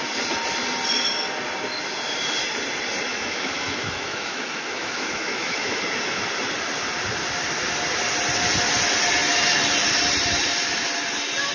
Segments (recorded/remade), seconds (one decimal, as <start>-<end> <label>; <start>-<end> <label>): 0.0-3.1 recorded; 3.1-5.8 remade; 5.8-11.5 recorded